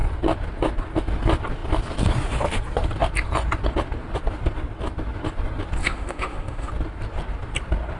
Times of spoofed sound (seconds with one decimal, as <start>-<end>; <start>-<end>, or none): 5.8-6.7